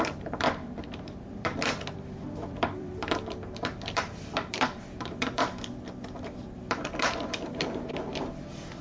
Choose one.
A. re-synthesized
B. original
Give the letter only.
A